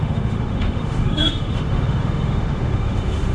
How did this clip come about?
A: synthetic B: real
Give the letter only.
A